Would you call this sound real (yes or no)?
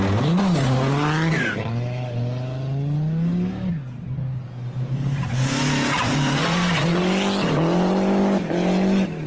yes